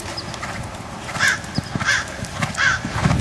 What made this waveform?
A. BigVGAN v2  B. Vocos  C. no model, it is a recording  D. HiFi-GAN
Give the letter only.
C